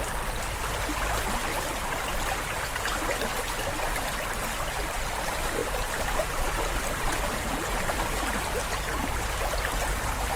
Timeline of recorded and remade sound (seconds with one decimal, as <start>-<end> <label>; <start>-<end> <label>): 0.0-5.6 recorded; 5.6-10.4 remade